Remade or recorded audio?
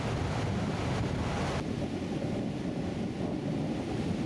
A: recorded